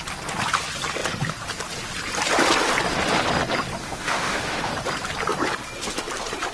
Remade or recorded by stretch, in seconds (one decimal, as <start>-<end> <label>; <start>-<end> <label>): 0.0-3.8 recorded; 3.8-4.7 remade; 4.7-6.5 recorded